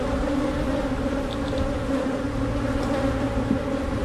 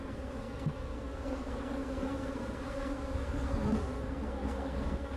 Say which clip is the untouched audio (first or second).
first